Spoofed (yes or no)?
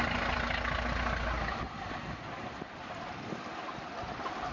no